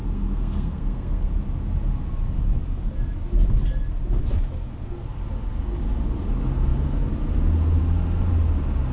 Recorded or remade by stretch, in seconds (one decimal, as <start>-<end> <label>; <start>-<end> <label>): 0.0-1.3 remade; 1.3-8.9 recorded